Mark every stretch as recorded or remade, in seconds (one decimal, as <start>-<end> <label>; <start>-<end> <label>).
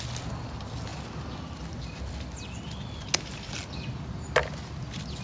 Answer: 0.0-5.2 recorded